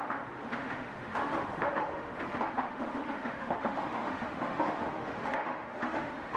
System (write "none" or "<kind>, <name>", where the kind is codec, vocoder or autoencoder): autoencoder, DAC-VAE